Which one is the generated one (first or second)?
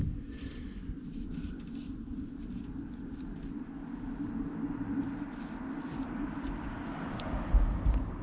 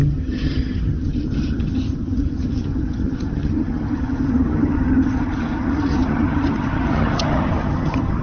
second